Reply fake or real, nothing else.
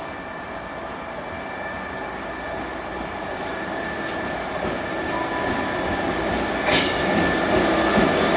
real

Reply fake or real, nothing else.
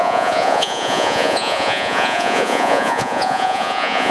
fake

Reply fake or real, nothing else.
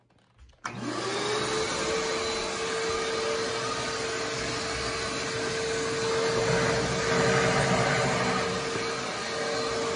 real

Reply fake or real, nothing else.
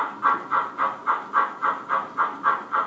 real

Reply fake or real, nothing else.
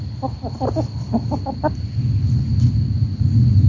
real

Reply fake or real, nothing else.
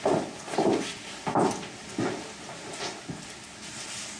real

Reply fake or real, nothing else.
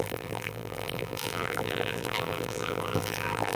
fake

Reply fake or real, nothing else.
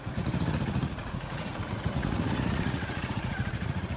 fake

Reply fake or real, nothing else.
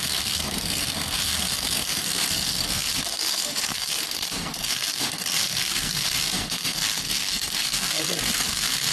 fake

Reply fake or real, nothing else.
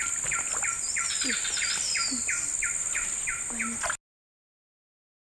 real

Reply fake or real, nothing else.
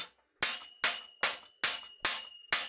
real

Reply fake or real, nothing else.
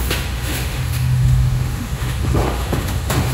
fake